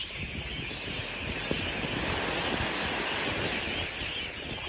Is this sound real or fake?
real